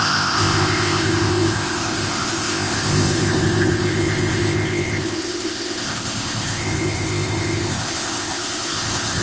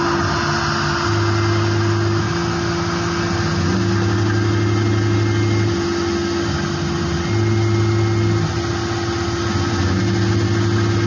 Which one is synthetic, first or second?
first